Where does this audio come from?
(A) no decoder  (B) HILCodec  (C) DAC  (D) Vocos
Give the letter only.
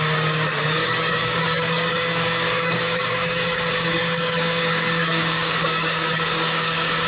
C